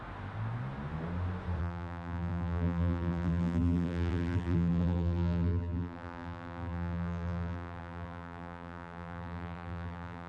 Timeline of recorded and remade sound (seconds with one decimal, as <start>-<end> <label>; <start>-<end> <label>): 0.0-1.6 recorded; 1.6-10.3 remade